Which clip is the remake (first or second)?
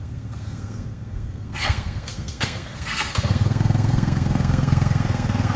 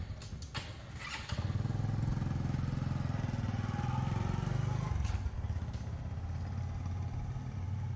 first